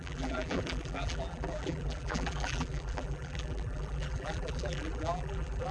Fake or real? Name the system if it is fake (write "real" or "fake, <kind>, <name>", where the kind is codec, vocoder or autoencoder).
fake, vocoder, BigVGAN v2